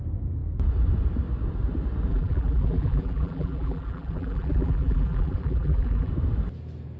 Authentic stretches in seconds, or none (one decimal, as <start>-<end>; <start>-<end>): 0.0-2.1; 6.1-7.0